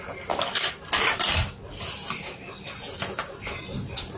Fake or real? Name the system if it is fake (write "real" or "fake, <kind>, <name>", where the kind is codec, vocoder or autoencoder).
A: real